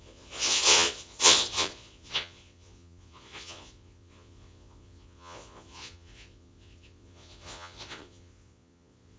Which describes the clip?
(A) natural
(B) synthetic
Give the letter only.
B